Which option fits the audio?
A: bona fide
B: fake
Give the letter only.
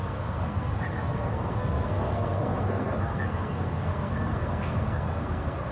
B